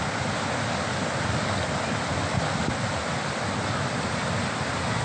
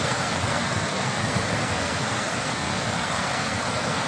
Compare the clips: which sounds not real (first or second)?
second